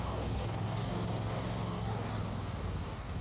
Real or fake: fake